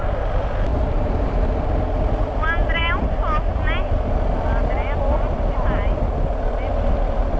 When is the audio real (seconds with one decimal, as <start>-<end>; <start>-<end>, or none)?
0.0-0.7; 1.3-7.4